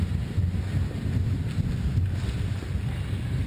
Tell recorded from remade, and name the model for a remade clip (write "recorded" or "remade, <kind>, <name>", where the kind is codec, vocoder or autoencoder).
recorded